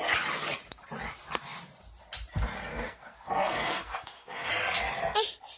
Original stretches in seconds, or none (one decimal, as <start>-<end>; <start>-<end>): 0.0-2.7; 4.5-5.6